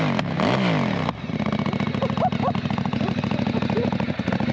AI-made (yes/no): no